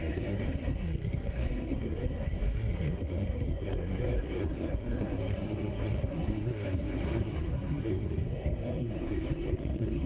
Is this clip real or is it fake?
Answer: fake